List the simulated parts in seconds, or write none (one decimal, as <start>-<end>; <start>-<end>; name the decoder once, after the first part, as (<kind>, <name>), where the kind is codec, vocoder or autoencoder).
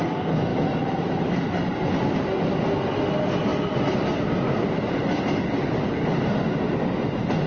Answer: none